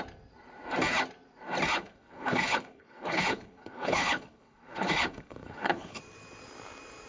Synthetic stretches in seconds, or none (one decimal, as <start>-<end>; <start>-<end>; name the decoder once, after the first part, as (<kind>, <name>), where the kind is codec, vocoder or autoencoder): 1.7-6.0 (codec, HILCodec)